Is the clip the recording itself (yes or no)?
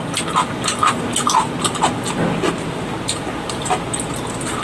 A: yes